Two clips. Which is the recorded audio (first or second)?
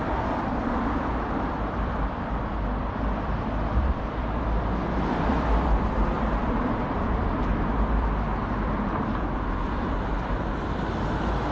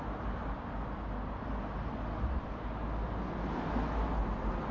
second